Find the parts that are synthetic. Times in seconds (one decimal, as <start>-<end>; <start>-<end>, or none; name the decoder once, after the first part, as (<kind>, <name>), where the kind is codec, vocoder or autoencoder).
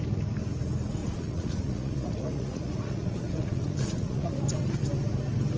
1.0-4.4 (vocoder, Vocos)